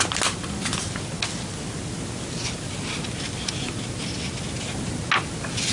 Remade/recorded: recorded